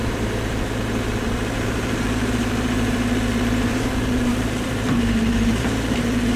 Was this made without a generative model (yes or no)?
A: no